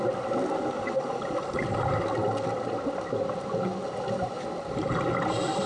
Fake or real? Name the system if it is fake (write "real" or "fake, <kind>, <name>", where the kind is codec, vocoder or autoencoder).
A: real